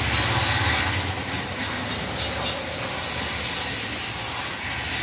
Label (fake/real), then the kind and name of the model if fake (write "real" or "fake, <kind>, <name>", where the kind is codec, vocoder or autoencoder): real